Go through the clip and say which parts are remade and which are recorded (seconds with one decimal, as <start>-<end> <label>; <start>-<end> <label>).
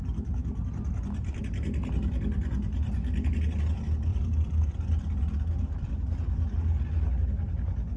0.0-0.4 recorded; 0.4-1.4 remade; 1.4-4.1 recorded; 4.1-5.9 remade; 5.9-8.0 recorded